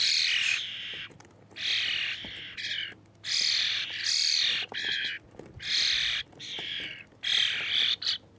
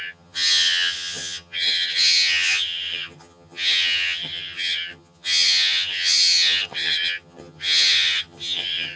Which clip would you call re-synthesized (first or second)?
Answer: second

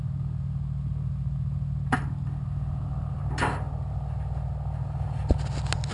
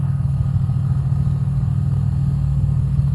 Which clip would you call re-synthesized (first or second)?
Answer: second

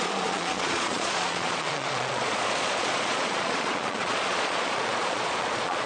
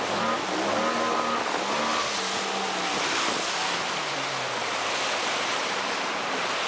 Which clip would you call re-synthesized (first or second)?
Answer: first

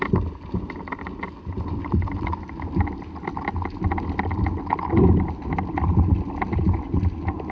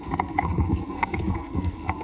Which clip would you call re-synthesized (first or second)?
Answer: second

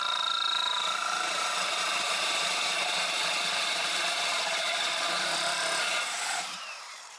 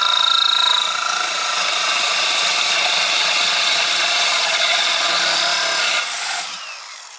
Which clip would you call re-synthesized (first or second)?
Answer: first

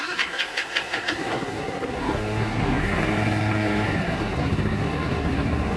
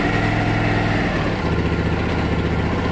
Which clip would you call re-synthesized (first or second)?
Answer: first